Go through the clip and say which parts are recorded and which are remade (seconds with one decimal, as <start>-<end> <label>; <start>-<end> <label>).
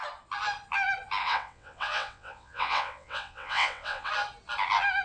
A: 0.0-1.2 recorded; 1.2-4.1 remade; 4.1-5.0 recorded